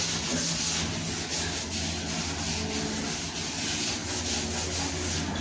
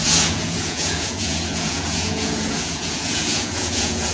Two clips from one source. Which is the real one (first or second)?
first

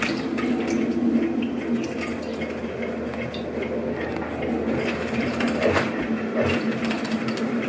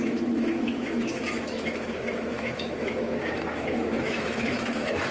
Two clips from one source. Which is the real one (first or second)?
first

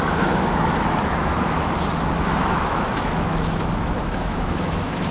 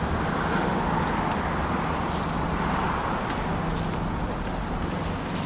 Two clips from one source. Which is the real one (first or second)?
second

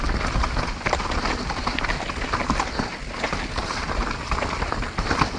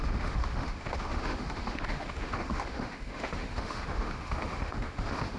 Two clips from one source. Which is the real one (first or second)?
first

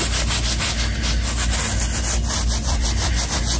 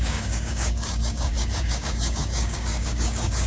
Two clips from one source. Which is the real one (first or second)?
first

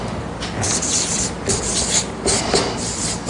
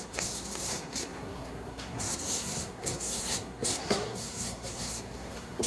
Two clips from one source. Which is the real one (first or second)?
first